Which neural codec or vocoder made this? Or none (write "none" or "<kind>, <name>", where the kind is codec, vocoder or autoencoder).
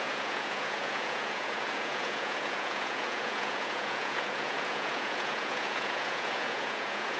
vocoder, Vocos